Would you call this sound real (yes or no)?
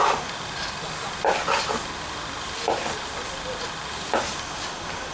yes